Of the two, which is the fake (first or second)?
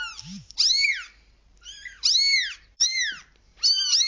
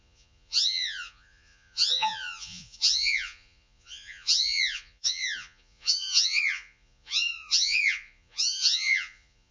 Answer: second